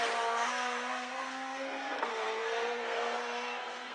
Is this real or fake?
fake